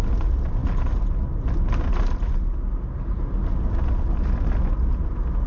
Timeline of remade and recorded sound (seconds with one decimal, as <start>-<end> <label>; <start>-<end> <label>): 0.0-5.5 recorded